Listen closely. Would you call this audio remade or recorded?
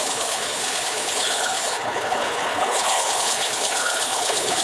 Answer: remade